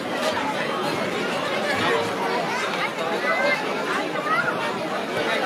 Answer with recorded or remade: recorded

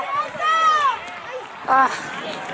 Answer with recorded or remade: recorded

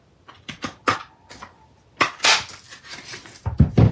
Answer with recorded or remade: recorded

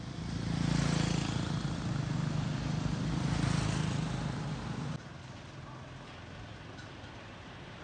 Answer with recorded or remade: recorded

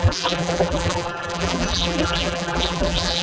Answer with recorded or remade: remade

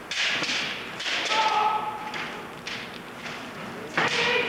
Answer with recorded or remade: recorded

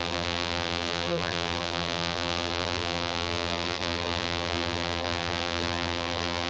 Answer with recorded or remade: remade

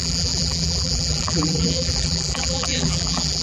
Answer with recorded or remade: remade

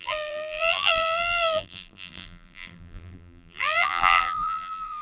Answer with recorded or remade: remade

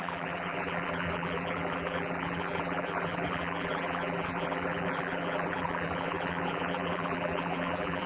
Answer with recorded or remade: remade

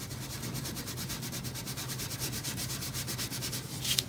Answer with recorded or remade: recorded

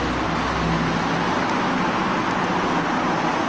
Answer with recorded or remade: recorded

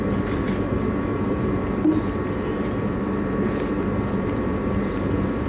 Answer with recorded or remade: remade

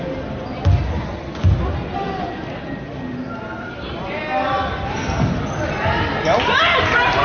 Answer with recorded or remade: recorded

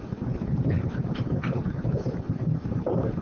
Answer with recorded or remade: remade